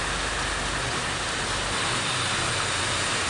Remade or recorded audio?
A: recorded